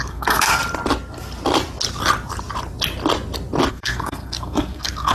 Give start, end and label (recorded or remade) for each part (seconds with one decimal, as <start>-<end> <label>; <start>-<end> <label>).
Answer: 0.0-0.6 remade; 0.6-3.7 recorded; 3.7-5.1 remade